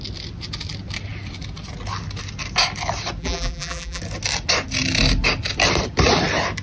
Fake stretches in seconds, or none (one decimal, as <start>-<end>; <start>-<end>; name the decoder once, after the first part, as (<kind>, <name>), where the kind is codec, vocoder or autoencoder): 3.2-4.0 (vocoder, BigVGAN v2)